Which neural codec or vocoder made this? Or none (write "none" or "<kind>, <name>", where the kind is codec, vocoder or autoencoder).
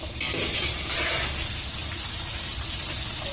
none